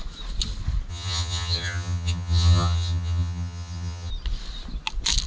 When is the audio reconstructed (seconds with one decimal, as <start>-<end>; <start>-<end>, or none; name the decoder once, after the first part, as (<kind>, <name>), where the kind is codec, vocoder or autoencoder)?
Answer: 0.9-4.1 (vocoder, HiFi-GAN)